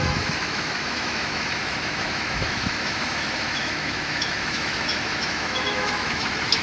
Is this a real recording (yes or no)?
no